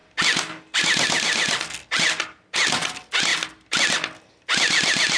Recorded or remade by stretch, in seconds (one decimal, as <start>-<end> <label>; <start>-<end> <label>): 0.0-5.2 recorded